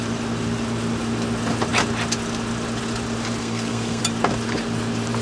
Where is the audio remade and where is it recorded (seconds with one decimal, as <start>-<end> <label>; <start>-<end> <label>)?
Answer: 0.0-3.4 recorded; 3.4-4.0 remade; 4.0-5.2 recorded